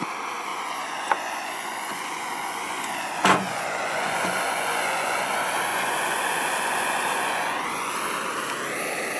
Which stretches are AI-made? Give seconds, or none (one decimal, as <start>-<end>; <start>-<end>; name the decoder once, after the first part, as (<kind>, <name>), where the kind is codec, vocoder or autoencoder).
0.5-5.3 (vocoder, Vocos); 5.7-7.9